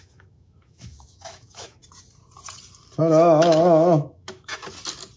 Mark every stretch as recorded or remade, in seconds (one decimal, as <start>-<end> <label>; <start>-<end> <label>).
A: 0.0-1.8 remade; 1.8-3.0 recorded; 3.0-4.6 remade; 4.6-5.2 recorded